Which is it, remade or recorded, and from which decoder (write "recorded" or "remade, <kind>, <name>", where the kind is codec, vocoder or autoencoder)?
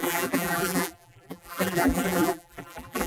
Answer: remade, vocoder, BigVGAN v2